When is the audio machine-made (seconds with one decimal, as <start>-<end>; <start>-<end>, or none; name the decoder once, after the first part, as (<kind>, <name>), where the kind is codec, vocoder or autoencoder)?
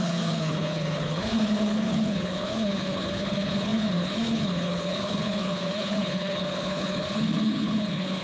0.0-8.2 (codec, HILCodec)